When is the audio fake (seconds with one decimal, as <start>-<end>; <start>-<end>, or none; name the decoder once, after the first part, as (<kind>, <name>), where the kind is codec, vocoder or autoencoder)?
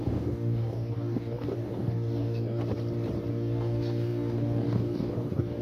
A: 0.0-2.6 (codec, DAC); 3.3-5.6